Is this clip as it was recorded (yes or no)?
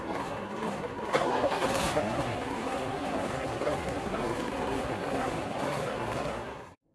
no